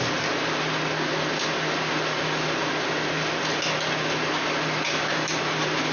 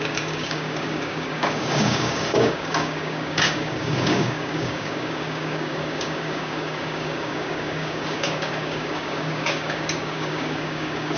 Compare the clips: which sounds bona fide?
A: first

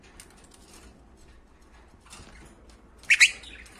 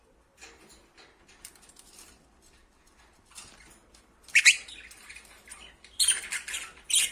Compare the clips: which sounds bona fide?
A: first